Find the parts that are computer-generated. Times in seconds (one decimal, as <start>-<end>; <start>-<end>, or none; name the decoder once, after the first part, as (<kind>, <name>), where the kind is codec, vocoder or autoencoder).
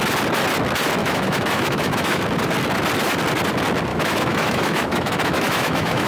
1.0-2.2 (autoencoder, DAC-VAE); 3.9-6.1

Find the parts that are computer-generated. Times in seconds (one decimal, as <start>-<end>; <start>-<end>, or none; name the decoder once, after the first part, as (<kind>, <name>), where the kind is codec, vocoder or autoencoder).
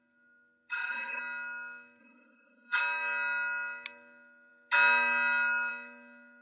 0.7-1.2 (codec, SNAC); 2.0-2.8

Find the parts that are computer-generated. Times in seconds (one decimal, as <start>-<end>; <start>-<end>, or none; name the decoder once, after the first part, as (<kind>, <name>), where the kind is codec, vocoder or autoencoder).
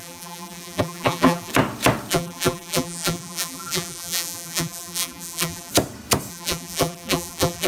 0.0-1.5 (vocoder, BigVGAN v2); 2.1-5.7; 6.3-7.7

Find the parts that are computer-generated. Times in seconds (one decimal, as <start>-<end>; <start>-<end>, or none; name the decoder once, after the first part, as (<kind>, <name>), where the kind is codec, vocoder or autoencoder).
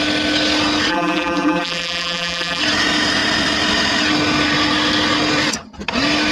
0.9-2.6 (vocoder, BigVGAN v2)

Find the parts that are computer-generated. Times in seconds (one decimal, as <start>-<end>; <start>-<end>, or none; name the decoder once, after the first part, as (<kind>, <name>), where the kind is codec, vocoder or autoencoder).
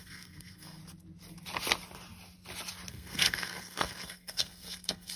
0.0-0.8 (codec, SNAC); 2.9-5.2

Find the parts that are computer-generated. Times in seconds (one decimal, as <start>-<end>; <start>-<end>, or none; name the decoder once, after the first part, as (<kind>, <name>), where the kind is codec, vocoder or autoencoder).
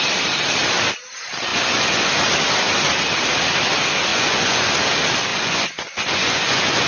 1.5-2.1 (vocoder, Vocos); 4.1-4.7; 5.3-6.9